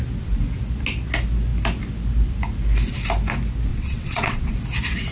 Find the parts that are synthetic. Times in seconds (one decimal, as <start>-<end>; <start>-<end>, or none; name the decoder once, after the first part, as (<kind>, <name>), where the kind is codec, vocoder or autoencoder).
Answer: 3.7-4.5 (vocoder, WaveNeXt)